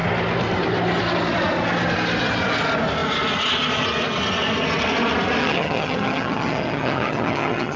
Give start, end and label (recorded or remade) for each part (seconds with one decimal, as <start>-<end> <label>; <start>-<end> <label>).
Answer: 0.0-5.4 recorded; 5.4-7.8 remade